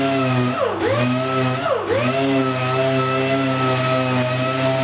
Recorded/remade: recorded